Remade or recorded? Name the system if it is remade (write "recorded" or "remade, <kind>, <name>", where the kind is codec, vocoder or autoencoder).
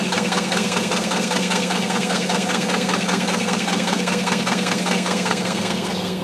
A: remade, codec, SNAC